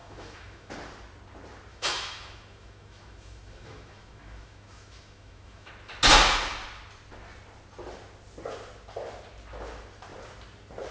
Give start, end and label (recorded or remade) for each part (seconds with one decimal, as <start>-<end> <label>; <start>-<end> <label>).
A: 0.0-0.7 remade; 0.7-1.7 recorded; 1.7-5.7 remade; 5.7-10.9 recorded